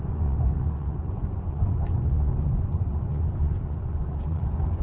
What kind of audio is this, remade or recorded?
remade